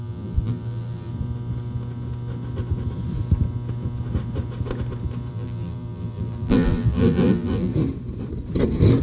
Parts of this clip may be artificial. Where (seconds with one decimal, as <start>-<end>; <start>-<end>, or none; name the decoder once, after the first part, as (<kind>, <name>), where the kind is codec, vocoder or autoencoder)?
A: 0.0-1.1 (vocoder, BigVGAN v2); 5.3-7.7